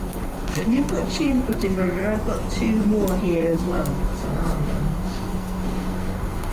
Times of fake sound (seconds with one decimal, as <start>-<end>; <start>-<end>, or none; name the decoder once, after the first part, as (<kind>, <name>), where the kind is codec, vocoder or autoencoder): 0.0-2.0 (codec, SNAC); 3.2-6.5